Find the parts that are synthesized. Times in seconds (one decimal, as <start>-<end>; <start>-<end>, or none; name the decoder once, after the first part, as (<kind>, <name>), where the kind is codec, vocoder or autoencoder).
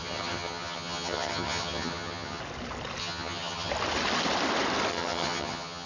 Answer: 0.0-2.4 (vocoder, HiFi-GAN); 3.0-3.7; 4.9-5.9